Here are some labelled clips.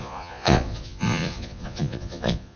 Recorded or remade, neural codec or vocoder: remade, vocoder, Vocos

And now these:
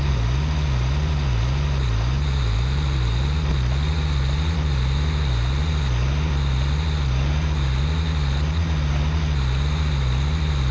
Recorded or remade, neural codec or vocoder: recorded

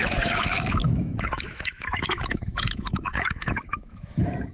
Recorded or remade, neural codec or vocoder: remade, autoencoder, DAC-VAE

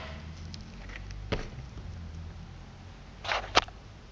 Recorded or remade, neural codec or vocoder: recorded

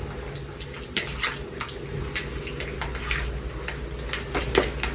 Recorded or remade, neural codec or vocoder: recorded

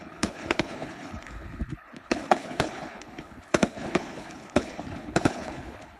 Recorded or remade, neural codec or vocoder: remade, codec, HILCodec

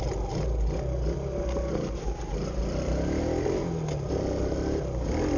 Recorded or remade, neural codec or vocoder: recorded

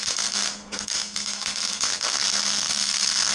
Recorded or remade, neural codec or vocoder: remade, codec, SNAC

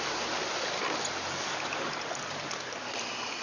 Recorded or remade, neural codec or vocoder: recorded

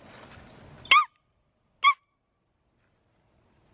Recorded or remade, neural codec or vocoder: recorded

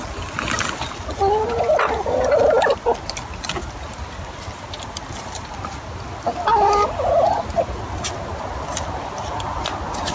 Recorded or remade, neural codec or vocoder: recorded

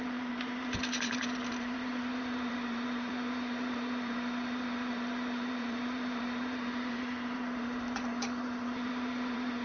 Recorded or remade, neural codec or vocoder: remade, vocoder, BigVGAN v2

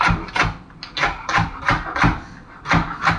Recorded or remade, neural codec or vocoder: recorded